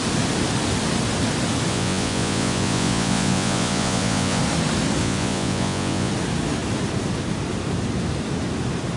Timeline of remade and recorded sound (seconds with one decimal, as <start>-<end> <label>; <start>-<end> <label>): 0.0-1.7 recorded; 1.7-4.4 remade; 4.4-5.0 recorded; 5.0-6.1 remade; 6.1-9.0 recorded